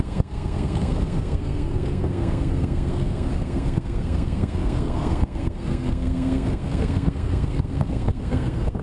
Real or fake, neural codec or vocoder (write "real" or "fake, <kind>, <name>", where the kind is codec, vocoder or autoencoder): fake, codec, SNAC